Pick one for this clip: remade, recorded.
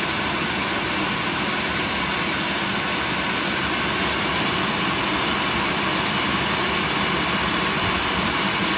recorded